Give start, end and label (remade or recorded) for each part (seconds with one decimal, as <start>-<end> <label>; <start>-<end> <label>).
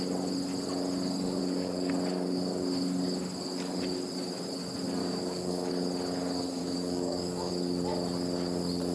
0.0-1.4 recorded; 1.4-1.9 remade; 1.9-5.0 recorded; 5.0-5.7 remade; 5.7-6.6 recorded; 6.6-7.5 remade; 7.5-8.9 recorded